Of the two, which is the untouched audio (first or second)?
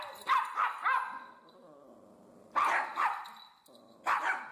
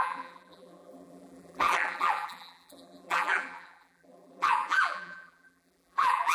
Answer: first